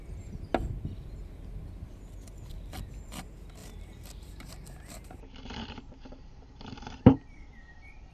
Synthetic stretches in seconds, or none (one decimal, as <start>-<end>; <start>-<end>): 3.6-8.1